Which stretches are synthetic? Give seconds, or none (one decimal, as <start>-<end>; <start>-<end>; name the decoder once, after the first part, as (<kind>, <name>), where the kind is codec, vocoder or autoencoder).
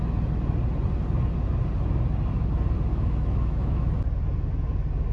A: 2.9-3.9 (autoencoder, DAC-VAE)